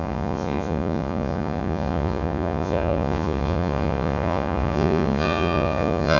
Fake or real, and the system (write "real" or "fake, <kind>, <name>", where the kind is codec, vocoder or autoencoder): fake, vocoder, Vocos